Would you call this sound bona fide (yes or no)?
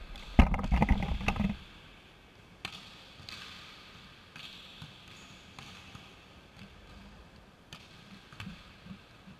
yes